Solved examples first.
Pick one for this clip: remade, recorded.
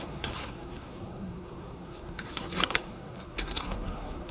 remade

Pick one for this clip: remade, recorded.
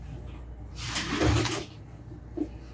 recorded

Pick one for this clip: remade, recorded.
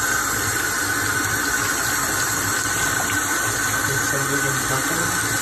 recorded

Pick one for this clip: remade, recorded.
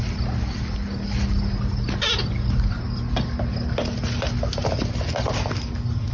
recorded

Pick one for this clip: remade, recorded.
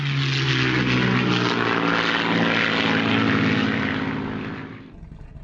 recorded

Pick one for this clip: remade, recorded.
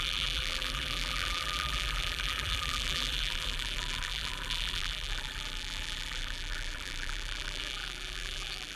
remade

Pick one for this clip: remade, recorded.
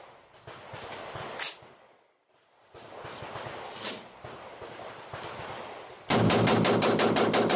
recorded